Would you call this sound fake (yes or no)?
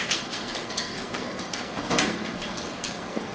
yes